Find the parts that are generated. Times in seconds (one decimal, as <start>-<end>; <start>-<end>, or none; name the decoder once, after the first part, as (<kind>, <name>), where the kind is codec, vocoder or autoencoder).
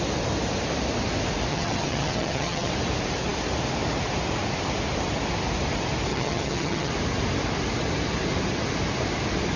1.5-2.7 (vocoder, HiFi-GAN); 6.1-6.9